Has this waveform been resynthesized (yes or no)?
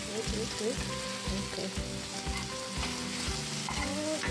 no